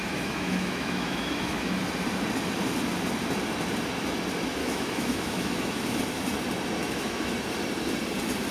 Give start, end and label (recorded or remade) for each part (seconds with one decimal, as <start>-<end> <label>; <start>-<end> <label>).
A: 0.0-1.8 remade; 1.8-4.6 recorded; 4.6-6.0 remade; 6.0-6.8 recorded; 6.8-7.3 remade; 7.3-8.5 recorded